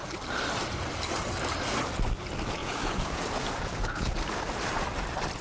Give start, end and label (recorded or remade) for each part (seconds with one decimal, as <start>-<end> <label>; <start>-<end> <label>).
0.0-2.6 recorded; 2.6-4.2 remade; 4.2-5.4 recorded